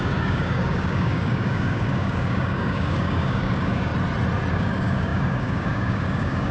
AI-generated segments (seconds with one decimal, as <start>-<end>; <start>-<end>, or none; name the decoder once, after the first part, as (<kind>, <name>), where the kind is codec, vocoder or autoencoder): 0.0-3.9 (codec, DAC); 4.5-6.5